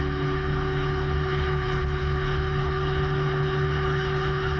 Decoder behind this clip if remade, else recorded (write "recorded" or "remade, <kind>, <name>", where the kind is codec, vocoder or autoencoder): remade, codec, HILCodec